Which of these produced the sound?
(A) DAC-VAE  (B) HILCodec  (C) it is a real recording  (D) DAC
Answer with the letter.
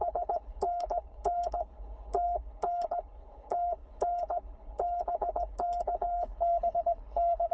B